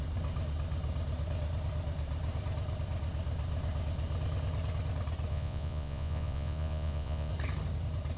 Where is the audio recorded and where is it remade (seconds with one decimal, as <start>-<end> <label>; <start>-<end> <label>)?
0.0-5.3 recorded; 5.3-7.3 remade; 7.3-8.2 recorded